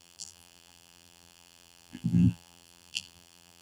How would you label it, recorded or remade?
remade